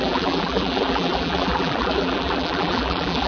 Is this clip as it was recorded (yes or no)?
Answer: no